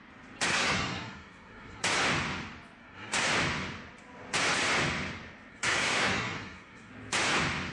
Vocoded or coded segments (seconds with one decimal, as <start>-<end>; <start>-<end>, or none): 0.5-1.8; 2.8-3.3; 5.5-6.9